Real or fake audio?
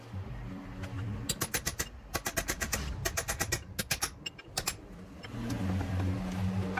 real